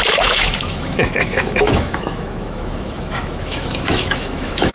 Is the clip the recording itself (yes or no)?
no